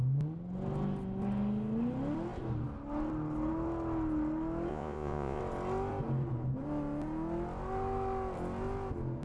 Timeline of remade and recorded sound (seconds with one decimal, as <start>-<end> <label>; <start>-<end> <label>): 0.0-4.7 recorded; 4.7-5.4 remade; 5.4-9.2 recorded